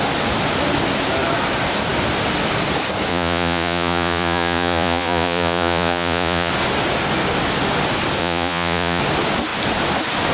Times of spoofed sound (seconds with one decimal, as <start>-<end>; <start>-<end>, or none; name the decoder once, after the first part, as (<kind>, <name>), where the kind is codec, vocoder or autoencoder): 3.1-6.5 (vocoder, Vocos); 8.2-9.0